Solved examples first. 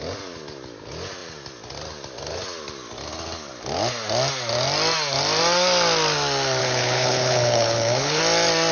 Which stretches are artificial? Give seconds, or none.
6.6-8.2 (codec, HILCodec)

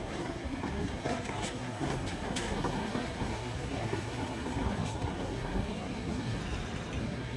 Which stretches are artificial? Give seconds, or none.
0.0-6.4 (codec, SNAC); 7.0-7.4

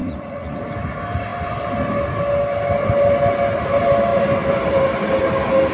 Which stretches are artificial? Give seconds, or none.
0.0-0.6 (vocoder, Vocos)

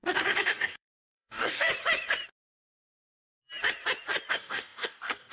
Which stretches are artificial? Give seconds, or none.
0.0-1.7 (codec, DAC); 4.3-5.3